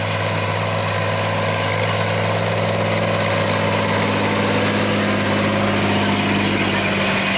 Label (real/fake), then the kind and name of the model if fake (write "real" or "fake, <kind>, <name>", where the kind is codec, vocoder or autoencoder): real